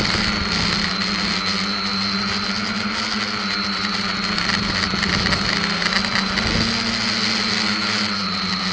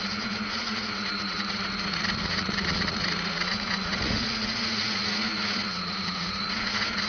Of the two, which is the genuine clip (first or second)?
first